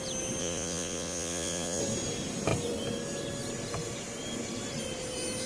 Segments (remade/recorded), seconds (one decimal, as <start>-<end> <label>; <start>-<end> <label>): 0.0-0.4 recorded; 0.4-1.8 remade; 1.8-5.5 recorded